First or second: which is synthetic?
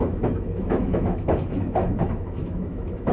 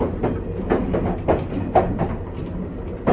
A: first